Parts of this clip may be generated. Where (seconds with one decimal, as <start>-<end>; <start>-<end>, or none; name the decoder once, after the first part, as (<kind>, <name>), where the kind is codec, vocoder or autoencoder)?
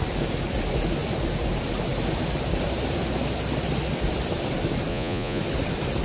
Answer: 4.9-5.4 (vocoder, Vocos)